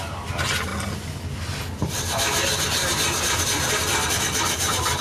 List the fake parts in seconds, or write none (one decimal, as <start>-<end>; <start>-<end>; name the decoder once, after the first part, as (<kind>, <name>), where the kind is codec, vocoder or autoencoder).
0.0-0.7 (vocoder, BigVGAN v2); 3.7-5.0